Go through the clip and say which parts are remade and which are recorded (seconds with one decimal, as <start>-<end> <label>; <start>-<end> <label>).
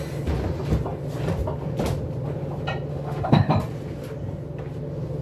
0.0-2.9 recorded; 2.9-3.5 remade; 3.5-5.2 recorded